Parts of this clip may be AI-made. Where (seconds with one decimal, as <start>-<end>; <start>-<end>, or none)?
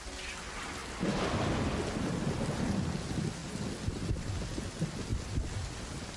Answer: none